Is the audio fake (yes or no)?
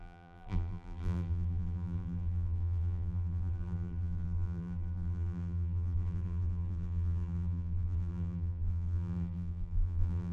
yes